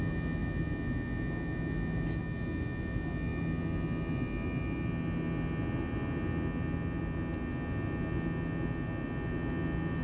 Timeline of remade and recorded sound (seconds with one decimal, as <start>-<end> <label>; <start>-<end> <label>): 0.0-10.0 recorded